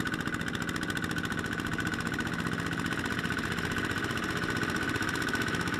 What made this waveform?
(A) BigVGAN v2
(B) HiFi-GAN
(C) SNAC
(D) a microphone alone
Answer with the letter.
D